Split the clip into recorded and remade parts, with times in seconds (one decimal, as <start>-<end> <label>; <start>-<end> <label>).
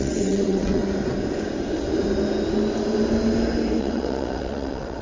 0.0-0.8 remade; 0.8-3.8 recorded; 3.8-5.0 remade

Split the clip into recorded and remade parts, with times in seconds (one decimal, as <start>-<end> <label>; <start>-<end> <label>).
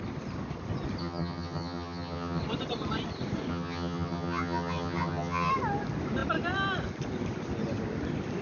0.0-1.0 recorded; 1.0-2.4 remade; 2.4-3.5 recorded; 3.5-5.5 remade; 5.5-8.4 recorded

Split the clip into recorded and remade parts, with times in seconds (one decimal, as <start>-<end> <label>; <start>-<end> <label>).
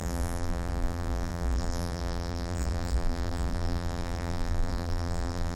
0.0-5.6 remade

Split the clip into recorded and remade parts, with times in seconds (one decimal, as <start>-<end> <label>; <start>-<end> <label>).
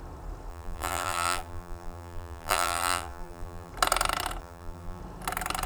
0.0-0.5 recorded; 0.5-3.7 remade; 3.7-4.4 recorded; 4.4-5.0 remade; 5.0-5.7 recorded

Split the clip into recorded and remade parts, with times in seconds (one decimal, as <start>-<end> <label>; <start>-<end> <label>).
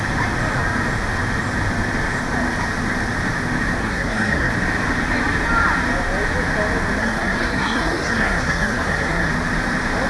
0.0-3.8 recorded; 3.8-4.5 remade; 4.5-7.0 recorded; 7.0-9.3 remade; 9.3-10.1 recorded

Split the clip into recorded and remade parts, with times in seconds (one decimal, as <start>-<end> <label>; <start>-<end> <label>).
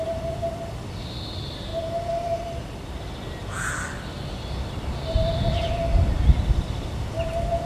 0.0-7.7 recorded